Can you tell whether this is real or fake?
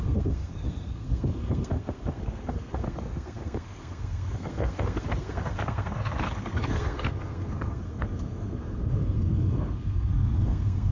fake